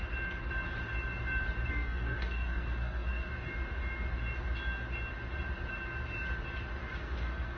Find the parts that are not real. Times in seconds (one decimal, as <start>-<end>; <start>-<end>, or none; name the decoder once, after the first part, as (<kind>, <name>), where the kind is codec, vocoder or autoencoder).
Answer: 1.7-3.3 (codec, SNAC); 6.9-7.6